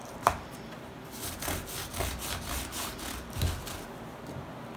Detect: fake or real real